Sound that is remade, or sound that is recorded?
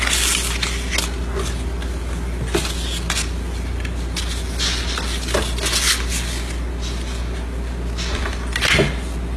recorded